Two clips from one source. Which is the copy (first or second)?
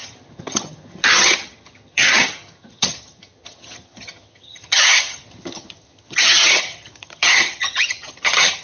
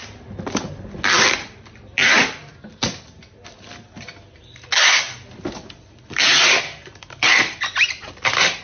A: first